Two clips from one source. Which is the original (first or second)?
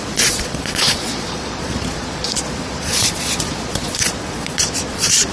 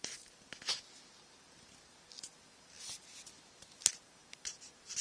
second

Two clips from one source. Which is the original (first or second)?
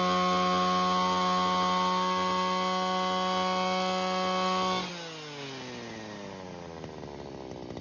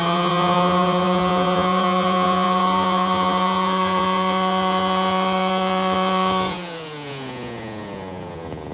first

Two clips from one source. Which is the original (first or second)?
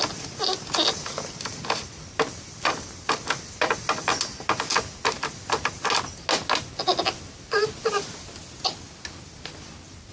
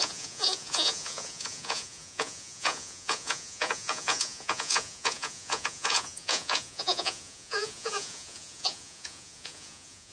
first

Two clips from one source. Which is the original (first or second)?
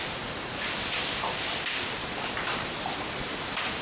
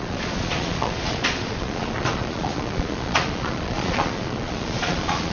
first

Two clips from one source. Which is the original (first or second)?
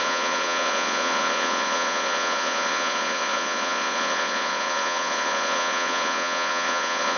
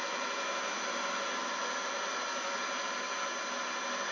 second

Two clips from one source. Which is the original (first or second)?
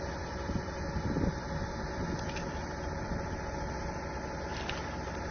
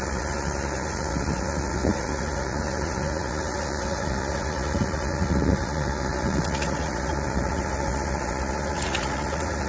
first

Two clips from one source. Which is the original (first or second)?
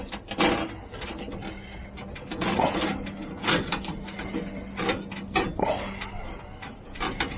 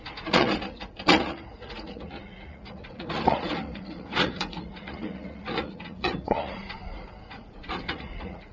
first